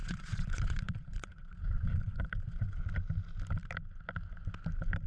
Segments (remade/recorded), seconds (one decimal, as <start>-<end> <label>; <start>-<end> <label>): 0.0-2.8 remade; 2.8-5.1 recorded